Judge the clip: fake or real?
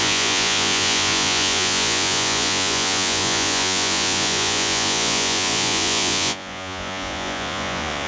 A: fake